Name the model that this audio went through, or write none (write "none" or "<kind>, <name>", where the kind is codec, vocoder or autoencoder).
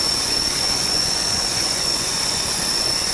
vocoder, Vocos